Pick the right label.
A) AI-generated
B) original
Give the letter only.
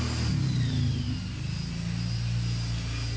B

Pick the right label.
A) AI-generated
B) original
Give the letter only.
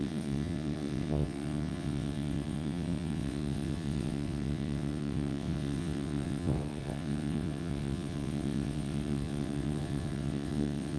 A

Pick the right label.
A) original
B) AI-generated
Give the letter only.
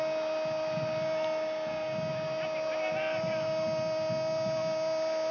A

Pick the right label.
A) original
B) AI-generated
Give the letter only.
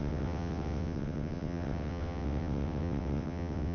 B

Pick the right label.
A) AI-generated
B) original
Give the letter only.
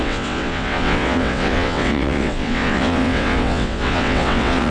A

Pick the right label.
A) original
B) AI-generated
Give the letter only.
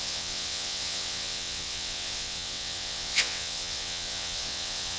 B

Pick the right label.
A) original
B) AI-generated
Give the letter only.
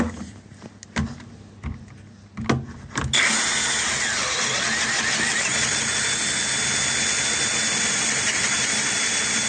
A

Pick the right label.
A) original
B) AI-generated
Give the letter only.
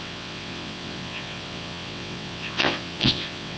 B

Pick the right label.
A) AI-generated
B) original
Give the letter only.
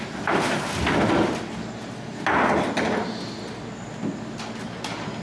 B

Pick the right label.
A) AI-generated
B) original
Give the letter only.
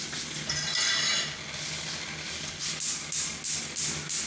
B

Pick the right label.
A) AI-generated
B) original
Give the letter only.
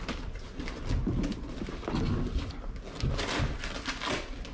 B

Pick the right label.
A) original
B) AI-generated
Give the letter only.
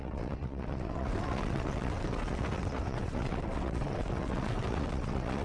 B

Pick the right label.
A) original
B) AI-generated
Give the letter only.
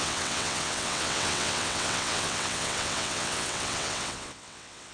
B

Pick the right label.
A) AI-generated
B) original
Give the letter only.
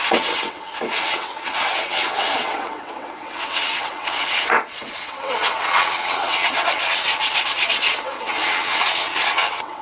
A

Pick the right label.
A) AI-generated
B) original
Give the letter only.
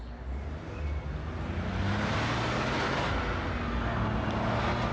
B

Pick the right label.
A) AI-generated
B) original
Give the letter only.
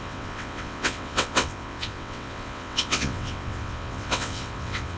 A